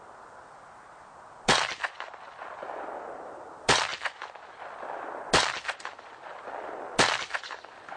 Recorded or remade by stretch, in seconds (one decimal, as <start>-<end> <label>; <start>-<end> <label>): 0.0-8.0 recorded